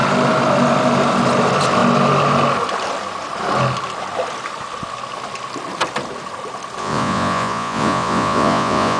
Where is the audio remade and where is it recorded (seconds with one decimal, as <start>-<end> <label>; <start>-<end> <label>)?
0.0-6.8 recorded; 6.8-9.0 remade